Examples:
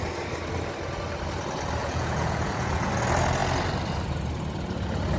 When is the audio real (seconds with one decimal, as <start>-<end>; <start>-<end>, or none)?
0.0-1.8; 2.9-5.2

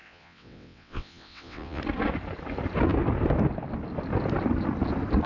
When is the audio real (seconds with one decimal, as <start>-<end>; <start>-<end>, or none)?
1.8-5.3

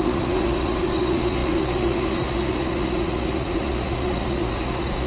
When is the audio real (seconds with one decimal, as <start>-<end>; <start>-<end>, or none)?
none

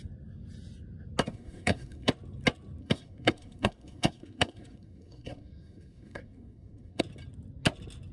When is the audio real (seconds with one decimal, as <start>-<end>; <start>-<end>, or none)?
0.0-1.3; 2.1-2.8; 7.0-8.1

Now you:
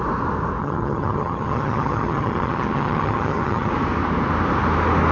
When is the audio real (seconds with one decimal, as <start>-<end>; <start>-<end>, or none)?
0.0-0.6; 3.7-5.1

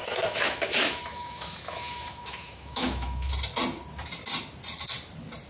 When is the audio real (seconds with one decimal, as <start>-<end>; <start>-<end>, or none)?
3.3-5.5